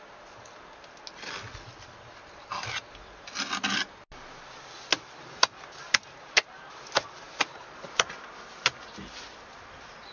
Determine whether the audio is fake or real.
real